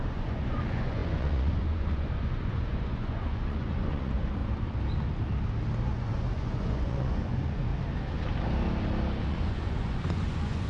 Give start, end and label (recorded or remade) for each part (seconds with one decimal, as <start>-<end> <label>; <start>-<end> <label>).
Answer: 0.0-4.4 remade; 4.4-5.8 recorded; 5.8-7.7 remade; 7.7-9.2 recorded; 9.2-10.7 remade